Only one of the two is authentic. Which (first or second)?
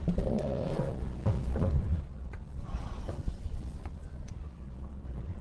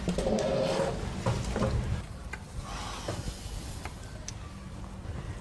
second